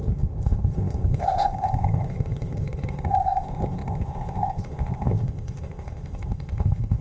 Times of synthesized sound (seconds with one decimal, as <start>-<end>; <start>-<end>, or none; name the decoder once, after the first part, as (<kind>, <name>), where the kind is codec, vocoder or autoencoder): 0.0-7.0 (codec, ZipCodec)